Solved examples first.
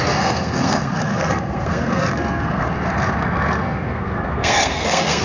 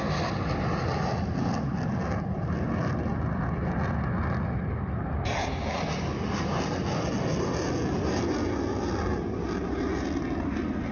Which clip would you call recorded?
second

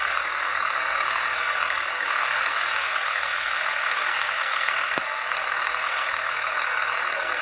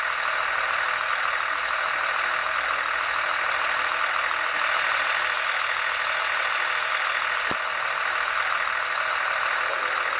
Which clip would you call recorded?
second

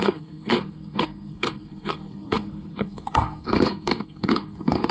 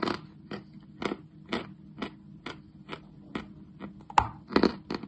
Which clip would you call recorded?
second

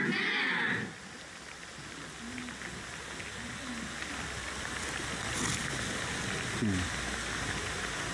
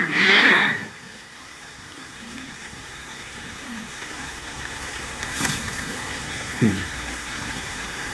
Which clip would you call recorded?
first